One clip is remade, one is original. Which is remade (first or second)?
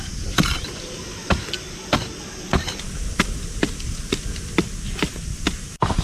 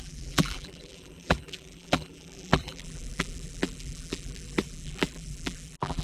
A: second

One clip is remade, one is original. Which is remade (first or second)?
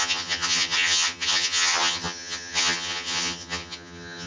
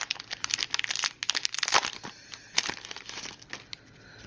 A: first